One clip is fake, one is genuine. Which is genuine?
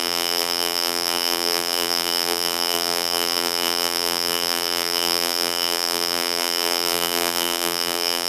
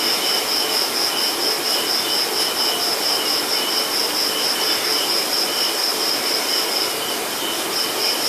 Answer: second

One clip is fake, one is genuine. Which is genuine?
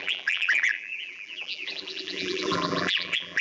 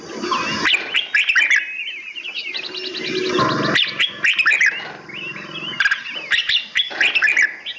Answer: second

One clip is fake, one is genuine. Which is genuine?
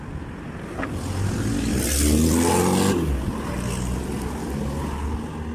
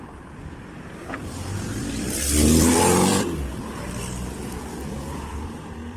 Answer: first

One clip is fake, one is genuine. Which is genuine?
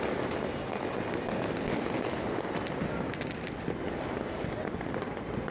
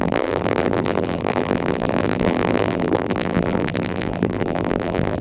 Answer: first